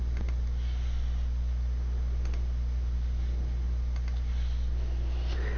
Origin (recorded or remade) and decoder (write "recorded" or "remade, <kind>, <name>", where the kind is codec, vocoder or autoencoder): recorded